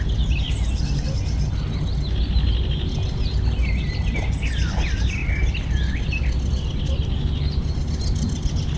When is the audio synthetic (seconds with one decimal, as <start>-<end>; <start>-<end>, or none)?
none